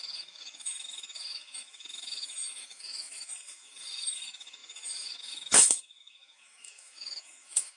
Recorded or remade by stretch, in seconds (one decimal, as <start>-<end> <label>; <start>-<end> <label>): 0.0-7.8 remade